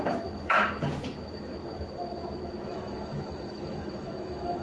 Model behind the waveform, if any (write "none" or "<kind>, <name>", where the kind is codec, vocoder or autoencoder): autoencoder, DAC-VAE